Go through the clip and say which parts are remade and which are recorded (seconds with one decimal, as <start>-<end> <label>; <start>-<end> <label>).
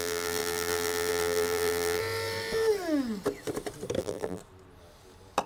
0.0-2.0 remade; 2.0-4.0 recorded; 4.0-4.4 remade; 4.4-5.5 recorded